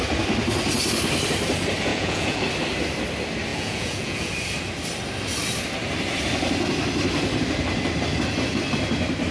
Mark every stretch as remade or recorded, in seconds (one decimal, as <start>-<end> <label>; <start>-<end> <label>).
0.0-1.9 recorded; 1.9-2.4 remade; 2.4-3.5 recorded; 3.5-4.3 remade; 4.3-9.3 recorded